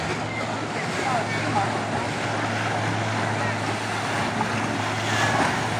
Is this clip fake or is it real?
real